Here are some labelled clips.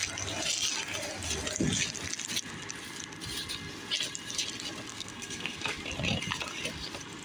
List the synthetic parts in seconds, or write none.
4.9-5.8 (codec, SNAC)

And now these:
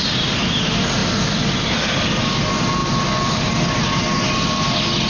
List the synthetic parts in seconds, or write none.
none

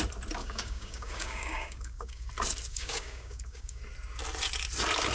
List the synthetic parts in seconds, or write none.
0.4-2.3 (codec, DAC); 2.7-3.8

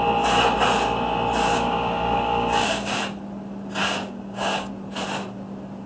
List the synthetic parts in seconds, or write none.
1.5-3.0 (codec, DAC); 3.8-4.7

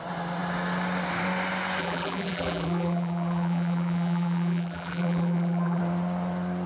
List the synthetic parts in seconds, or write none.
1.8-5.8 (vocoder, BigVGAN v2)

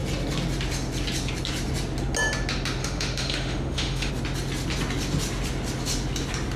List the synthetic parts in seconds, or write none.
2.8-4.1 (autoencoder, DAC-VAE)

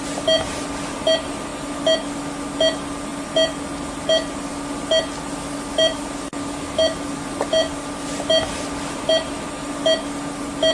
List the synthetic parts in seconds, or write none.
none